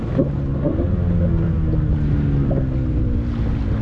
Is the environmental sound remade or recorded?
recorded